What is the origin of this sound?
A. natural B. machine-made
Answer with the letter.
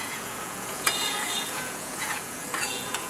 B